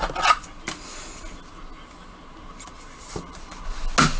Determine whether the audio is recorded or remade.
recorded